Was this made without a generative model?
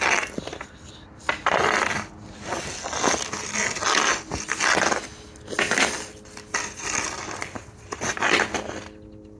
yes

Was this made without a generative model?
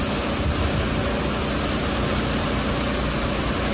yes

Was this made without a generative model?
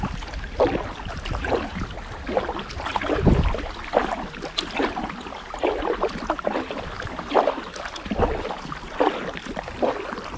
yes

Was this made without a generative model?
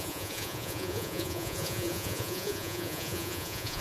no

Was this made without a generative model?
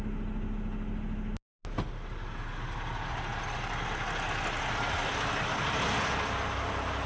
yes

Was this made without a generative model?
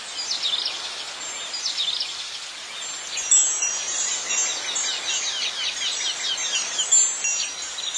yes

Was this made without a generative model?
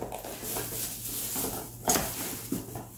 yes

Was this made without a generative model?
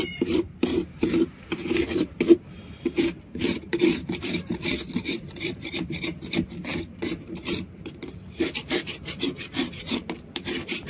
no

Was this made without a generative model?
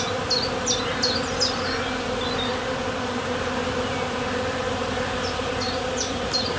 yes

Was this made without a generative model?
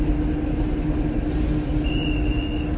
yes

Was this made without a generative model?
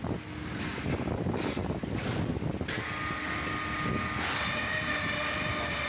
yes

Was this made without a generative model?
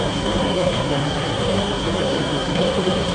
no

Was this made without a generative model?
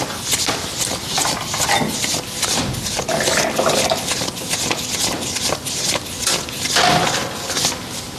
yes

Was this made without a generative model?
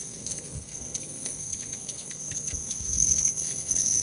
no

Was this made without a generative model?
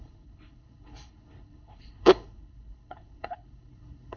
no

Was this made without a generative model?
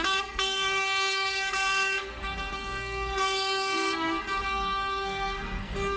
no